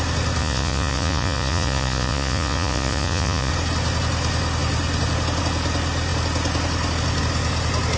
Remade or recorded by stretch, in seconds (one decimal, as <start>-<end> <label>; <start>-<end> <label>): 0.0-0.4 recorded; 0.4-3.5 remade; 3.5-8.0 recorded